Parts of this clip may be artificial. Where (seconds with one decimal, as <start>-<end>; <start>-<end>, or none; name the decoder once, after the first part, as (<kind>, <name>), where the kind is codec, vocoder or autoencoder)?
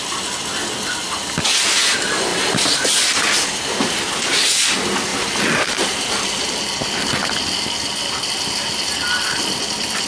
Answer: none